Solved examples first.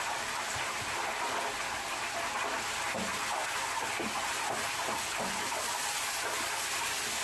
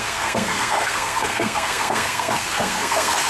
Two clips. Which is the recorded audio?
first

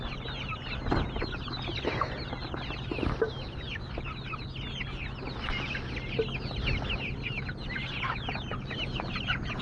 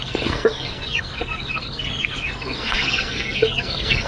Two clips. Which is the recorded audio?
first